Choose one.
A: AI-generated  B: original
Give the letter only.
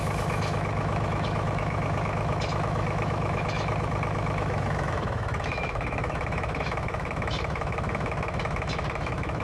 A